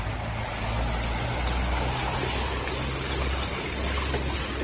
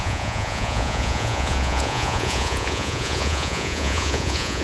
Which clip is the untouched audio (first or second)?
first